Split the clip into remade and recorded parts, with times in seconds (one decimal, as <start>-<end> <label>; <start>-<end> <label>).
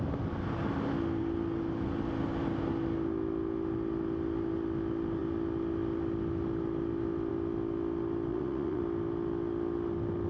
0.0-8.3 recorded; 8.3-8.8 remade; 8.8-10.3 recorded